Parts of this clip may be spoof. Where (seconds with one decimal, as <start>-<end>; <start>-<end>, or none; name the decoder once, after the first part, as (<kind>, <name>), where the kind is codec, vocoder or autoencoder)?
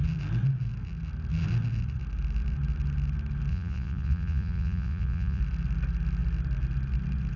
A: 3.5-5.4 (vocoder, Vocos)